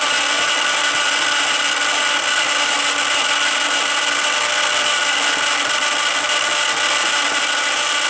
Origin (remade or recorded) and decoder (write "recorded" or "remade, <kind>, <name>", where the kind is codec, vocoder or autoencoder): recorded